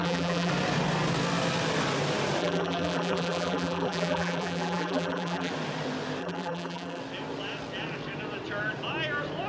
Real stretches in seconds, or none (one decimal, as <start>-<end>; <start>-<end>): 0.5-2.4; 5.5-6.2; 7.0-9.5

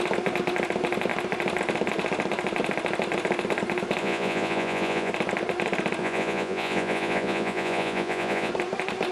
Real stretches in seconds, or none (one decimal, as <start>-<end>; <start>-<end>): 0.0-4.0; 5.1-6.0; 8.5-9.1